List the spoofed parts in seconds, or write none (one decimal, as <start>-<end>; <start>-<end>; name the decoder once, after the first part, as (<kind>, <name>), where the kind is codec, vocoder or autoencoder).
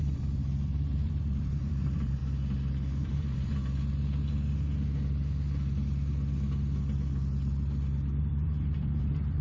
0.0-2.2 (vocoder, BigVGAN v2); 3.0-3.6; 8.2-9.4